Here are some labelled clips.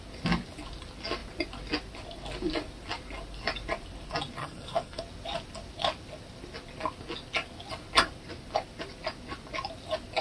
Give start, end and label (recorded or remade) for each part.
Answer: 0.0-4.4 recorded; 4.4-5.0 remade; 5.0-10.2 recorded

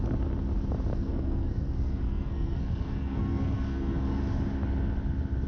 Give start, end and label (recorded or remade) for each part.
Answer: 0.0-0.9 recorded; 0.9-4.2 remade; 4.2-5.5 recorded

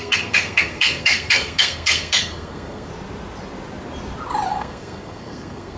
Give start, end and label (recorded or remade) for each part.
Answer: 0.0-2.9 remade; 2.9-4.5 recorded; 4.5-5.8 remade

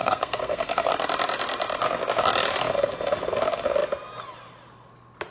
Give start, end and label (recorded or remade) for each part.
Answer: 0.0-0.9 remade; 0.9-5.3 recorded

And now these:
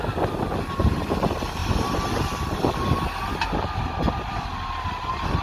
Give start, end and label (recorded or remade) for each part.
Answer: 0.0-5.4 recorded